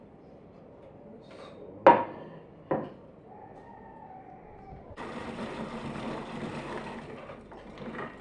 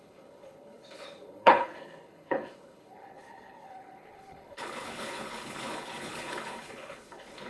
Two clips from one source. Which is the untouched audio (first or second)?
first